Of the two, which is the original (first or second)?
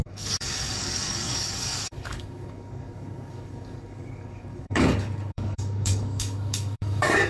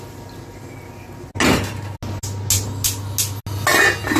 second